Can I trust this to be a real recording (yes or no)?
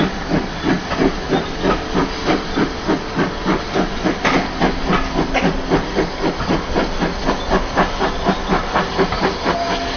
yes